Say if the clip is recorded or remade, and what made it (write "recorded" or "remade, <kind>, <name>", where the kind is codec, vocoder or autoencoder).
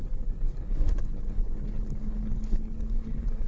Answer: remade, codec, HILCodec